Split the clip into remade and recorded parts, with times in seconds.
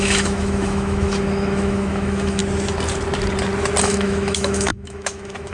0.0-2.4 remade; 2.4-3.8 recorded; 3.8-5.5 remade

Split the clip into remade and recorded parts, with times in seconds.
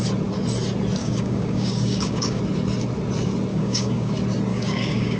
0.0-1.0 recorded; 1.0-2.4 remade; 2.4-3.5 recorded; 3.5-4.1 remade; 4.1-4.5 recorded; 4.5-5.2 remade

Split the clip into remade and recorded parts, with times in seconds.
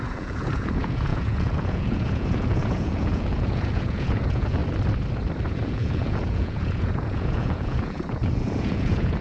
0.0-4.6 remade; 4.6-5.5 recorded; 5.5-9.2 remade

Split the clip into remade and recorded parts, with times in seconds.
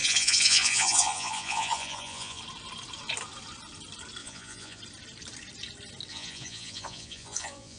0.0-2.4 remade; 2.4-4.2 recorded; 4.2-4.8 remade; 4.8-6.1 recorded; 6.1-7.8 remade